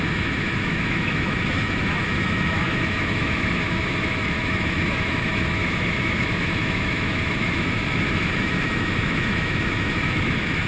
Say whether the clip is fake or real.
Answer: fake